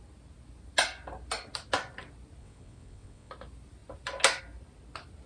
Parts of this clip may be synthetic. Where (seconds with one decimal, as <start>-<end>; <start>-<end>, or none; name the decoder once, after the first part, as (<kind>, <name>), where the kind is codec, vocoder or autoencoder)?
2.4-3.3 (vocoder, WaveNeXt)